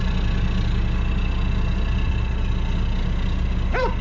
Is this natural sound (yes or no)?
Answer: yes